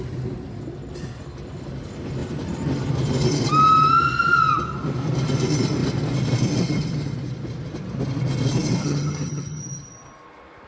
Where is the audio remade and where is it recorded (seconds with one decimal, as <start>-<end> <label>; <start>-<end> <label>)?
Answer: 0.0-8.8 recorded; 8.8-9.6 remade; 9.6-10.7 recorded